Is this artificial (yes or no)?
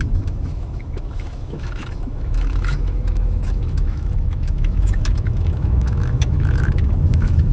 yes